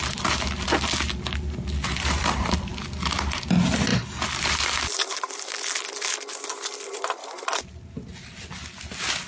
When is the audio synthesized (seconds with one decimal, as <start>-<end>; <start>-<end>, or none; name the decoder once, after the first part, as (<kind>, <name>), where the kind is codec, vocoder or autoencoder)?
none